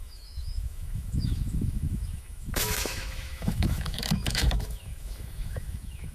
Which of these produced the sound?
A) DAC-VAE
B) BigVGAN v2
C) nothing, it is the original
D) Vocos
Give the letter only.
A